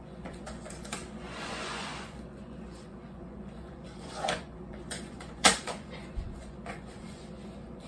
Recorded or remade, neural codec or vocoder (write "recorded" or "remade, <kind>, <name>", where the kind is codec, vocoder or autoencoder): remade, vocoder, Vocos